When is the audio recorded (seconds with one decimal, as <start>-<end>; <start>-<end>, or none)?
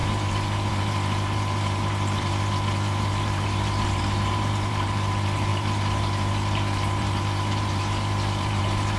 none